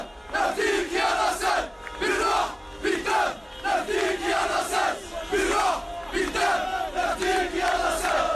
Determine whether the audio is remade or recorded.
recorded